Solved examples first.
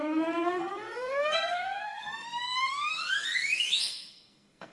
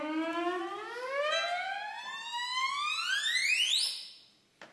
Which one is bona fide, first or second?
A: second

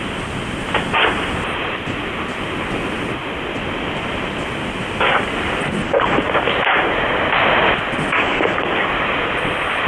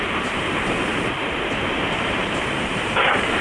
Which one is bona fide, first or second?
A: first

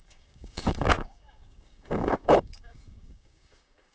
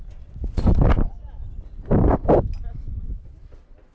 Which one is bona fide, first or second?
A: second